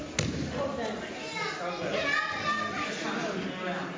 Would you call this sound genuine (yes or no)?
yes